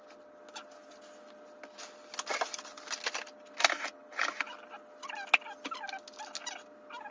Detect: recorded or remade recorded